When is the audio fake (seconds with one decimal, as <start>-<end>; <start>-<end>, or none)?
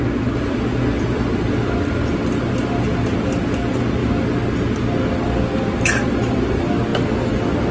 none